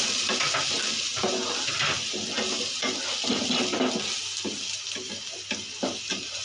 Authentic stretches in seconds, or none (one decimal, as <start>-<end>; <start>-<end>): 0.0-6.4